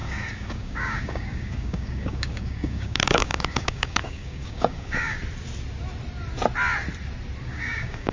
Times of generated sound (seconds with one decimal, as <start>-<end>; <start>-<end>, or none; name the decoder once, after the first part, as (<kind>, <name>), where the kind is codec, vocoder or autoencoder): 0.0-5.2 (codec, DAC); 7.4-8.1